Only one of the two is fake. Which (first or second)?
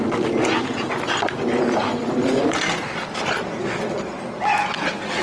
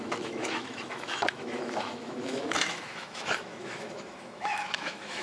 second